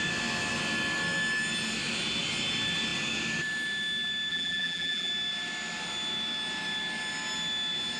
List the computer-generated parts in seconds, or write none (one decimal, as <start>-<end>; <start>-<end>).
4.3-5.1